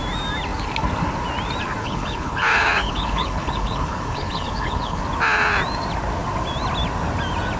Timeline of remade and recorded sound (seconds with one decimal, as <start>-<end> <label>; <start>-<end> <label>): 0.0-1.8 recorded; 1.8-5.0 remade; 5.0-7.6 recorded